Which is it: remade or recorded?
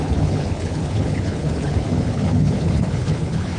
remade